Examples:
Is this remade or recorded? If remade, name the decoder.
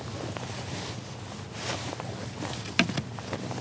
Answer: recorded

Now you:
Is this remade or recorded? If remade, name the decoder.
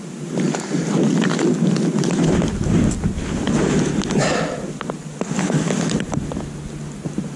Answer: recorded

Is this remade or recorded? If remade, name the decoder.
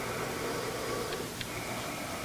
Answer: recorded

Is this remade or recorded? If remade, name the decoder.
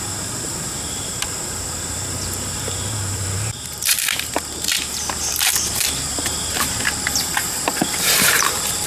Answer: remade, vocoder, BigVGAN v2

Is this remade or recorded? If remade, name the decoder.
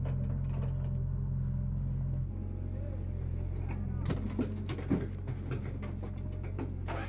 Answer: recorded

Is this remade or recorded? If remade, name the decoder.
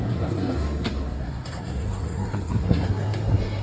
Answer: remade, codec, SNAC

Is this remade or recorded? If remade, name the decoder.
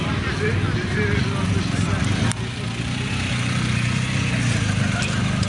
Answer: recorded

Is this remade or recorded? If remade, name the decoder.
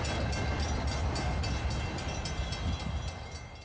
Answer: recorded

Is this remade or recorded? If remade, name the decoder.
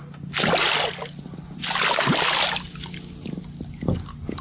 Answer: recorded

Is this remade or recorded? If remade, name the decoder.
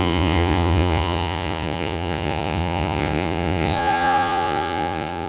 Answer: remade, vocoder, Vocos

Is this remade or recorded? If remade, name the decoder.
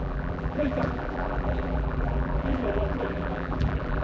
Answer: remade, vocoder, BigVGAN v2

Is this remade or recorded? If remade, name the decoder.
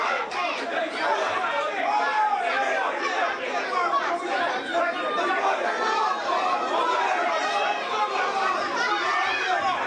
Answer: recorded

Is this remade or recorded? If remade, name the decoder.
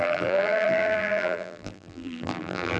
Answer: remade, vocoder, BigVGAN v2